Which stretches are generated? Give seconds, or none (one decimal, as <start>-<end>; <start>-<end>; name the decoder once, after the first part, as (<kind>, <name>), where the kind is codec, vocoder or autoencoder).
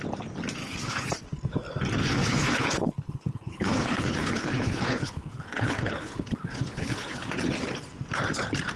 0.6-1.1 (codec, HILCodec); 2.0-7.3